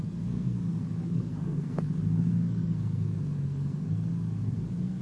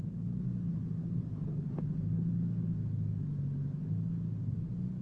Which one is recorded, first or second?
second